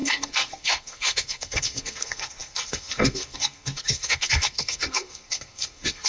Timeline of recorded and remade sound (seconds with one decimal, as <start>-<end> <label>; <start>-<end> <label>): 0.0-6.1 remade